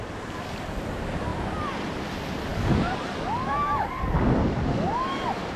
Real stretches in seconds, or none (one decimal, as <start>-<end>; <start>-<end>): 0.0-2.5